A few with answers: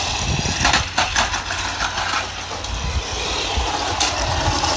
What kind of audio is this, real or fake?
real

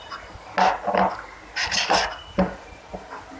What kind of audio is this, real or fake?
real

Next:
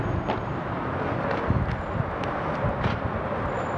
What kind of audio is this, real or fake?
real